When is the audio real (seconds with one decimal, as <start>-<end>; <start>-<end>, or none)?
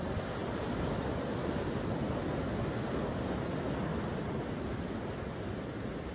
0.0-6.1